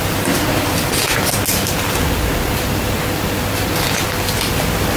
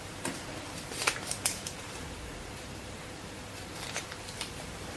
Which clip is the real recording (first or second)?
first